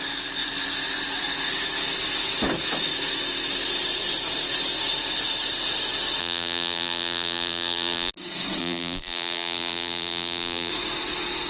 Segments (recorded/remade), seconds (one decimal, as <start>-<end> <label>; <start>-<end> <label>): 0.0-6.2 recorded; 6.2-8.1 remade; 8.1-8.6 recorded; 8.6-10.7 remade; 10.7-11.5 recorded